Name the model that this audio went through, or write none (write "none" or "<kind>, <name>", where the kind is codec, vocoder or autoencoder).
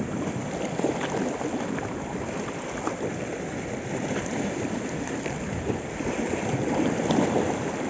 none